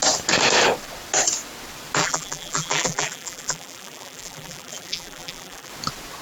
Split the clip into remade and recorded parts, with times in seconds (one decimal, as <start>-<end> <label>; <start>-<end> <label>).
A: 0.0-2.0 recorded; 2.0-5.7 remade; 5.7-6.2 recorded